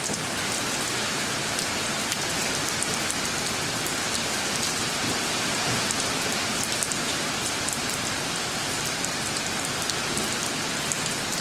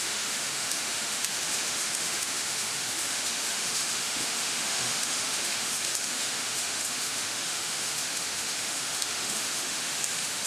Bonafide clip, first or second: first